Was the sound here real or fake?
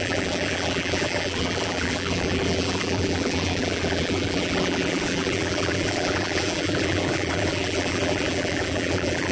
fake